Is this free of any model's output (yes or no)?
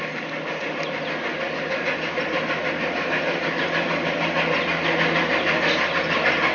yes